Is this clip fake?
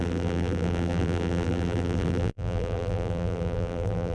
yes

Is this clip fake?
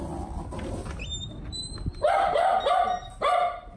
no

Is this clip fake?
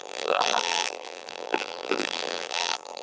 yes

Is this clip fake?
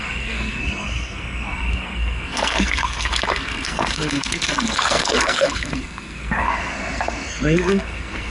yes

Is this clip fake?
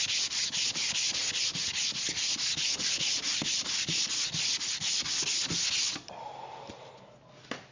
no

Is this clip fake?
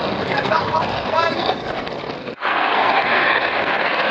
yes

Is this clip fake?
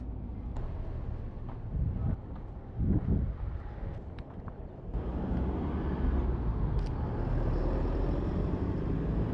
no